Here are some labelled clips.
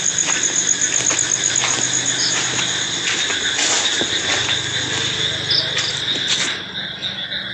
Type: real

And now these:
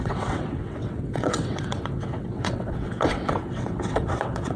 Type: fake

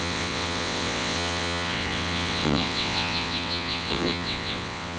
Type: fake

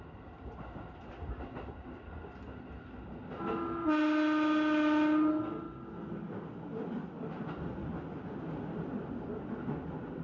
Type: real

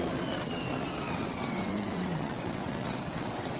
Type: fake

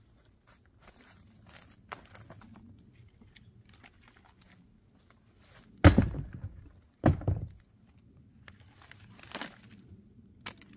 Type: real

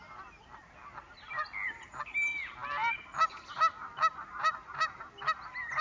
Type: real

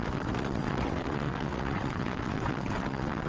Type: fake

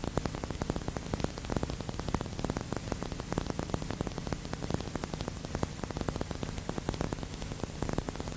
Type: real